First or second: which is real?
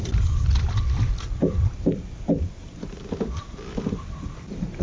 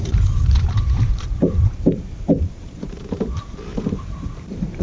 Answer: first